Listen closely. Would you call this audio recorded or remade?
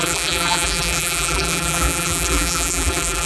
remade